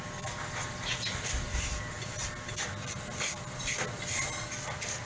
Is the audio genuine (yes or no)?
yes